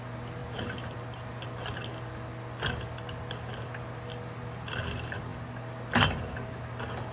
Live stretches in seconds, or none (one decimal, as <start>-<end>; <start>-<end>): 0.0-7.1

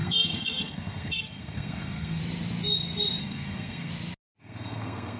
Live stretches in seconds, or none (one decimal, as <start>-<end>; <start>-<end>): 2.2-3.2; 3.9-4.4

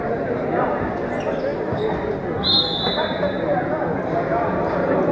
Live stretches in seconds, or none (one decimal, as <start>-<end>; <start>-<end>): 0.0-5.1

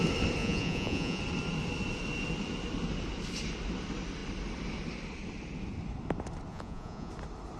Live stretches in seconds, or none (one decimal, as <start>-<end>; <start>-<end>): 0.0-0.4; 1.2-6.5; 7.1-7.6

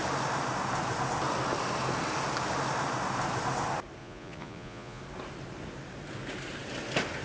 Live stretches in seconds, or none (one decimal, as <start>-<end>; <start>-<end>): 0.0-4.0; 5.0-7.2

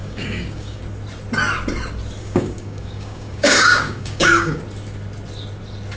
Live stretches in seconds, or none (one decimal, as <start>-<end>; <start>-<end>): 0.8-2.2; 4.6-6.0